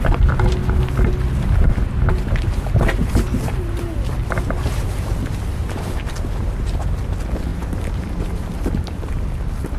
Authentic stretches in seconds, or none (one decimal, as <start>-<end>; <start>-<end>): 0.0-5.6; 6.1-9.8